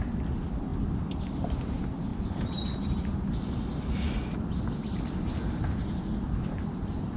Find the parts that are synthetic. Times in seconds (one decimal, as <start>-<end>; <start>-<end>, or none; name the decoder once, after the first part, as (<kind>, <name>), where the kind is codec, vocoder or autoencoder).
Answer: none

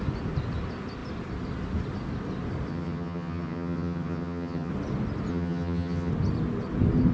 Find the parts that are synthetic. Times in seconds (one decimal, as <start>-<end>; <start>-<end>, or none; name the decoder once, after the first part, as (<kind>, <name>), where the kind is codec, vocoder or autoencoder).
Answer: 2.7-4.7 (vocoder, HiFi-GAN); 5.3-6.1

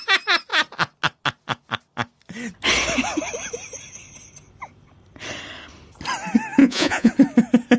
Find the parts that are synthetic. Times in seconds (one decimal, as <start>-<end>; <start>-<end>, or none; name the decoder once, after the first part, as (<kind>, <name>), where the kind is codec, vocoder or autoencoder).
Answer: 6.6-7.1 (vocoder, Vocos)

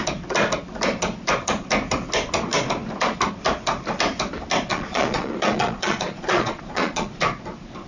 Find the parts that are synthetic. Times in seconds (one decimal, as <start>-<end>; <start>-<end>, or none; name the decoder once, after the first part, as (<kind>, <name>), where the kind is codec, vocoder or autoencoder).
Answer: 4.7-7.1 (vocoder, Vocos)

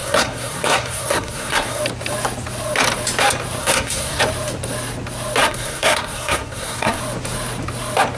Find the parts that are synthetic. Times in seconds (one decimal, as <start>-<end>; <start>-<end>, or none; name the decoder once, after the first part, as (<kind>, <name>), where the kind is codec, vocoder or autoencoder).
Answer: 0.0-1.8 (codec, SNAC); 3.6-4.2; 5.4-7.0

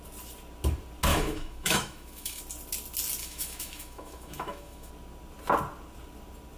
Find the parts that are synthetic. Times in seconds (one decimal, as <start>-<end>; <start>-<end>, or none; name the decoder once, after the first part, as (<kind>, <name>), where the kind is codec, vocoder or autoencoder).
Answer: 1.1-2.4 (autoencoder, DAC-VAE); 3.2-4.9

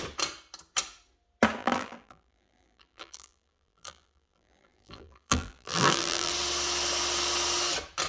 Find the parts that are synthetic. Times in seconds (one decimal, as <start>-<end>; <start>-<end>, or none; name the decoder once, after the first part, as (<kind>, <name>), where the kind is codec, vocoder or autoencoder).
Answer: 1.6-6.3 (vocoder, BigVGAN v2)